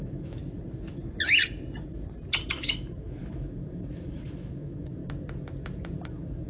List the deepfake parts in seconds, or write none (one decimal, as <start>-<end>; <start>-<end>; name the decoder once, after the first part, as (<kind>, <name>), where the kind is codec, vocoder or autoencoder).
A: 0.0-0.4 (autoencoder, DAC-VAE); 2.5-5.0; 6.1-6.5